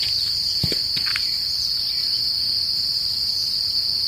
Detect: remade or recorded recorded